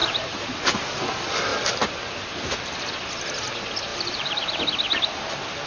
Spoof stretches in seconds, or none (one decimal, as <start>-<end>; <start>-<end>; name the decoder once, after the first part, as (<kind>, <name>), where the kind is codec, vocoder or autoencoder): 0.0-1.0 (vocoder, BigVGAN v2); 3.9-4.6